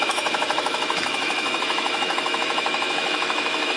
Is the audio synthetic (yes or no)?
yes